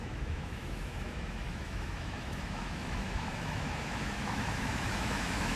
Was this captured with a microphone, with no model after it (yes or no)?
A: no